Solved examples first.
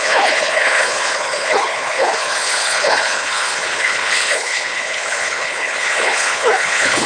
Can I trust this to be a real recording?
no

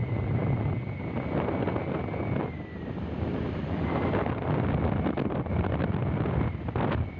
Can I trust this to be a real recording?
yes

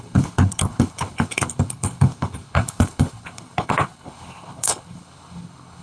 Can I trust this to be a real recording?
no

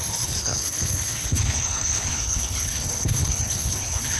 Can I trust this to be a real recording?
no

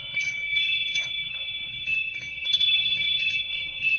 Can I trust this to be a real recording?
no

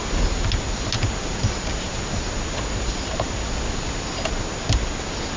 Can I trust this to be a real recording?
yes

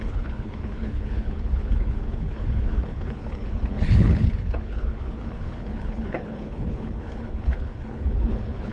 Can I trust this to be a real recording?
no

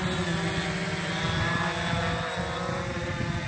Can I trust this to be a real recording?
yes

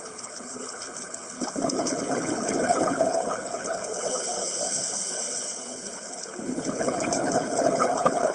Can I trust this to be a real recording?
no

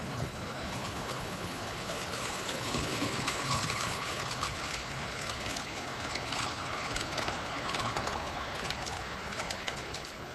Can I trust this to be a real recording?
no